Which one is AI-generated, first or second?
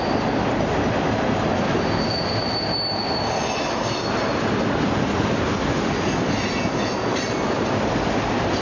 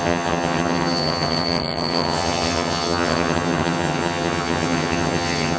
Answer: second